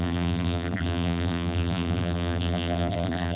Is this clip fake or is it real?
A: fake